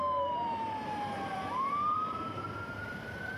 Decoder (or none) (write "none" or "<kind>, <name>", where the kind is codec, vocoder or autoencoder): vocoder, BigVGAN v2